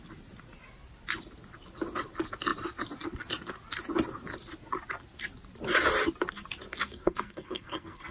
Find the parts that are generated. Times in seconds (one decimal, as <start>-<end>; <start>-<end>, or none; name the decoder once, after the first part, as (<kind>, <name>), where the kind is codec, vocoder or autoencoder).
6.8-8.1 (codec, SNAC)